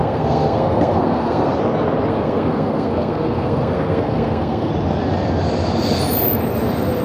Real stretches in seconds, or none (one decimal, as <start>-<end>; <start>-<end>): 1.5-2.1; 4.7-7.0